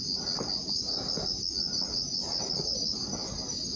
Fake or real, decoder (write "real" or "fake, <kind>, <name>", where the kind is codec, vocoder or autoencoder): real